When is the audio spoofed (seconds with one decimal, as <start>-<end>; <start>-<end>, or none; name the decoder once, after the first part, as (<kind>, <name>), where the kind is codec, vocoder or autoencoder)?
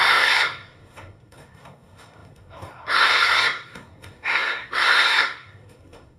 0.0-6.2 (codec, SNAC)